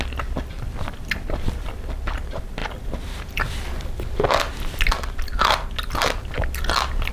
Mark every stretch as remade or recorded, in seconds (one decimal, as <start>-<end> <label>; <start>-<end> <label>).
0.0-2.6 remade; 2.6-7.1 recorded